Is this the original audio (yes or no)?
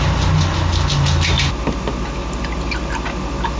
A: yes